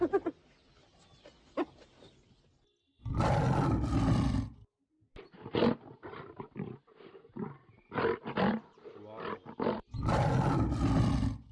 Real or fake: real